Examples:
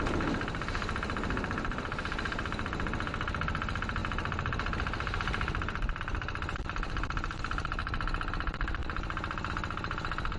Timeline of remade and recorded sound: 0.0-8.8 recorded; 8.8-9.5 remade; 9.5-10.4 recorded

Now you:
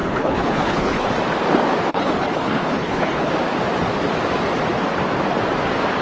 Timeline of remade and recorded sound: 0.0-1.1 remade; 1.1-1.9 recorded; 1.9-3.3 remade; 3.3-6.0 recorded

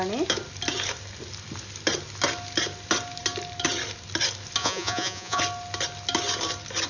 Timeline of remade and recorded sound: 0.0-4.6 recorded; 4.6-5.4 remade; 5.4-6.9 recorded

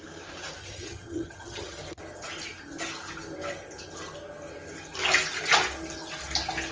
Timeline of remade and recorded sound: 0.0-0.6 recorded; 0.6-2.0 remade; 2.0-6.7 recorded

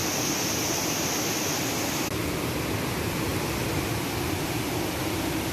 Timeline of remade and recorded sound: 0.0-3.3 recorded; 3.3-4.8 remade; 4.8-5.5 recorded